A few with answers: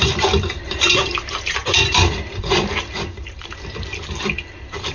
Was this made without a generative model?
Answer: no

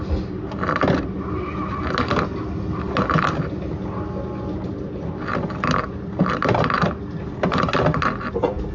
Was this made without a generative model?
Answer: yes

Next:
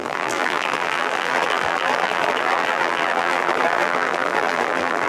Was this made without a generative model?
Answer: no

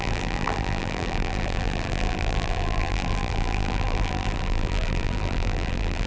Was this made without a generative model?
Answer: no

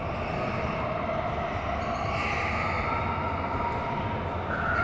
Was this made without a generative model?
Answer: yes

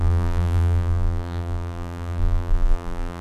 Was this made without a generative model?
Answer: no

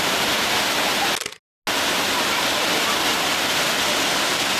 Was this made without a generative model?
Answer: yes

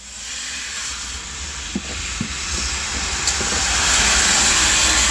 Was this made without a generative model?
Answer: no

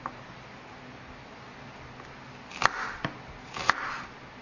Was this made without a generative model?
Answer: yes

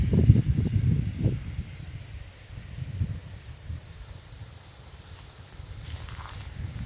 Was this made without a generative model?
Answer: no